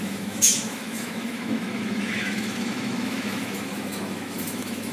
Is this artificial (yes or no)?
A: yes